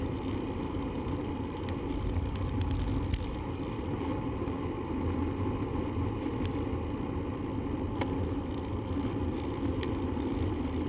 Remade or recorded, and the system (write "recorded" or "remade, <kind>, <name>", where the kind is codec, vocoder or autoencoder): recorded